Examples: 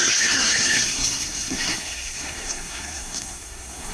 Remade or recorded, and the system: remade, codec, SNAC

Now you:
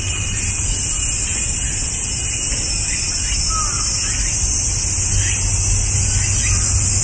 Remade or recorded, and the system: recorded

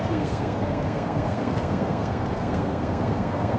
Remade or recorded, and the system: remade, codec, SNAC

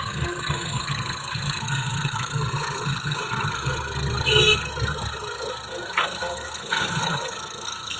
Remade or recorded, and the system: remade, codec, SNAC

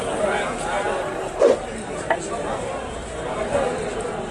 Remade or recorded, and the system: recorded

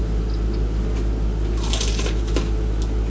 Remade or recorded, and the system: recorded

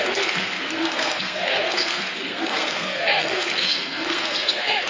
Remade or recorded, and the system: remade, codec, SNAC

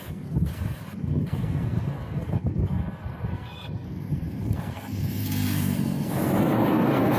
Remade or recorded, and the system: remade, codec, SNAC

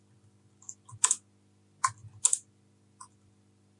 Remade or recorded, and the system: recorded